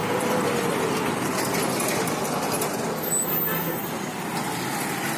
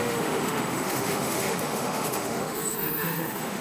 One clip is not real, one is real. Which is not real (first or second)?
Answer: second